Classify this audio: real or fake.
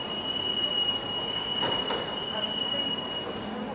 real